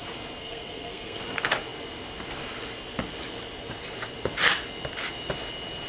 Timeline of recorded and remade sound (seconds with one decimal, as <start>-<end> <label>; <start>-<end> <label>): 0.0-0.4 recorded; 0.4-1.2 remade; 1.2-5.9 recorded